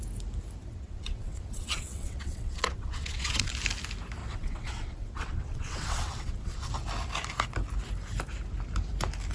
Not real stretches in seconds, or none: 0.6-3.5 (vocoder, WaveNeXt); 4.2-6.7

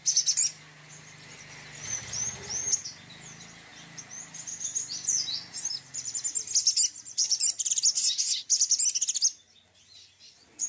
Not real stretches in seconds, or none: 7.2-7.7 (vocoder, BigVGAN v2)

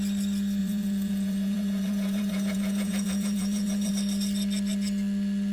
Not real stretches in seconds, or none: 0.6-3.9 (vocoder, Vocos)

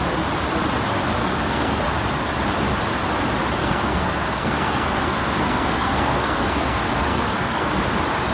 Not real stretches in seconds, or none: 1.2-1.8 (codec, SNAC); 3.6-7.7

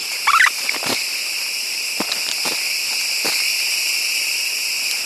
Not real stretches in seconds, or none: none

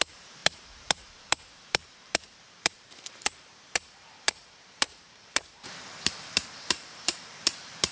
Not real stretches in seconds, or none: 0.0-7.9 (vocoder, BigVGAN v2)

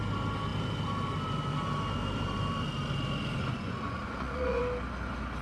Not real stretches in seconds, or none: 3.4-4.6 (vocoder, Vocos)

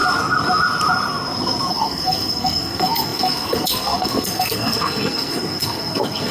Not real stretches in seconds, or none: 1.7-6.3 (codec, SNAC)